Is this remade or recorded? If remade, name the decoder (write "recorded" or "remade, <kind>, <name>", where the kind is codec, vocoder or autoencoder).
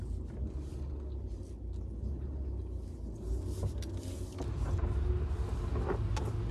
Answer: recorded